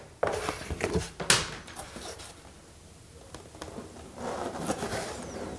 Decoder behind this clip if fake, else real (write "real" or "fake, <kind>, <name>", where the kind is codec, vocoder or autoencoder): real